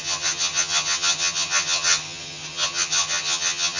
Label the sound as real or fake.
fake